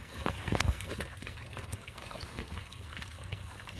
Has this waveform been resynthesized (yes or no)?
yes